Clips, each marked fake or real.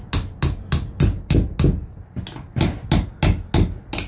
real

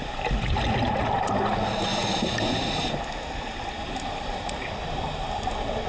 real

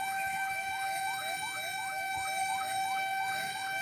fake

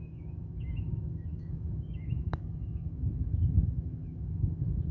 fake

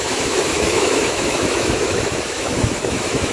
fake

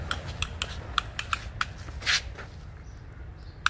real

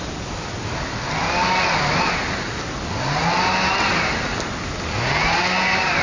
real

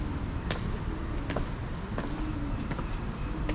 real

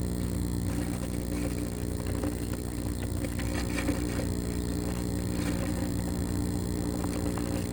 real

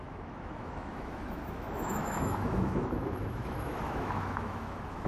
fake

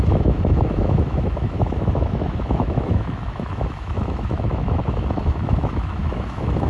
fake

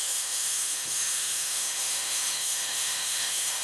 fake